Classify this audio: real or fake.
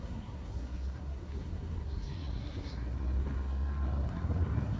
fake